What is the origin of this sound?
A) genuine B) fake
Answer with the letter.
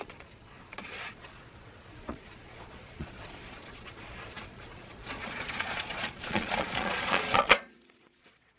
B